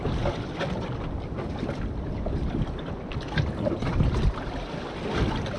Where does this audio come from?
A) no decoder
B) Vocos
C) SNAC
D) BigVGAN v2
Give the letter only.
A